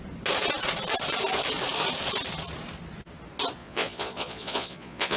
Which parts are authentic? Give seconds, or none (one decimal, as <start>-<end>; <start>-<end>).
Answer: 0.0-3.6